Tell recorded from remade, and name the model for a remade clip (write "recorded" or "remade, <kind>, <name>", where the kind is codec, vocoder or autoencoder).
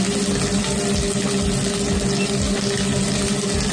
recorded